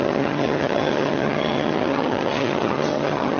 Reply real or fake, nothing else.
fake